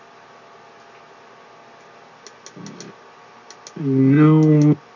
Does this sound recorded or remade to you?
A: recorded